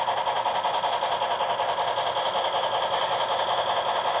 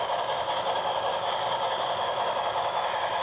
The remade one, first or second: second